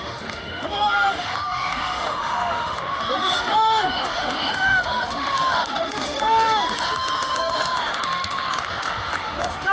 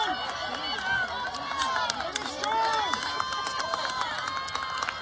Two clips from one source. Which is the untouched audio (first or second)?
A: second